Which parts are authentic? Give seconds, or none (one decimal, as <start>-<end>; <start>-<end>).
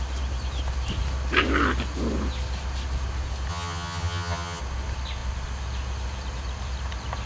0.0-3.5; 4.6-7.3